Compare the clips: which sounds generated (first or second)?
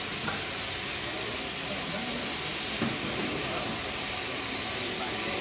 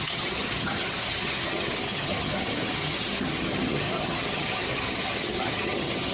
second